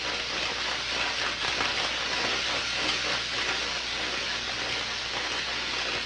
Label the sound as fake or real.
real